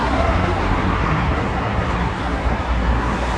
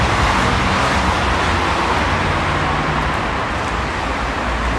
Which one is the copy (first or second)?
first